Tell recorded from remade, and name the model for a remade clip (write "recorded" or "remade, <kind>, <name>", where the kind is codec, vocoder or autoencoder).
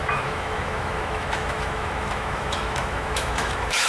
remade, autoencoder, DAC-VAE